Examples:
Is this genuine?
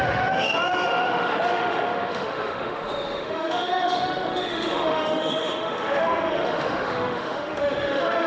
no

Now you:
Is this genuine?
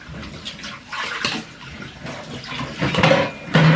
yes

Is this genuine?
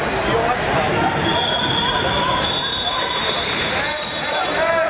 yes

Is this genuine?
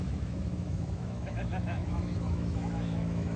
no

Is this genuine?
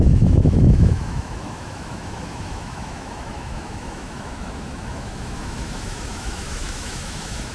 no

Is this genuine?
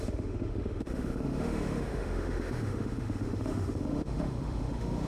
no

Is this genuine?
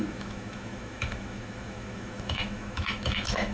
no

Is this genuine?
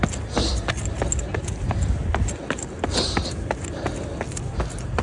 yes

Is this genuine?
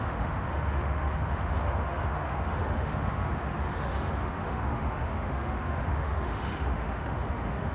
no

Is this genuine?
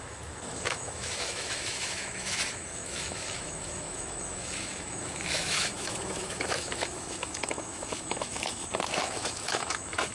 no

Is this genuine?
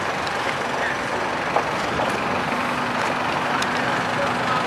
yes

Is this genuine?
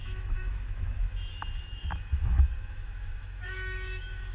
no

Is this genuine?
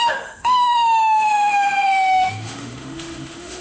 no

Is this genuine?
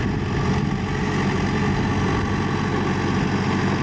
yes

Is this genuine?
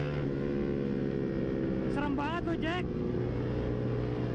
yes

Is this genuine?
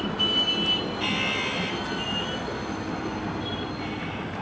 yes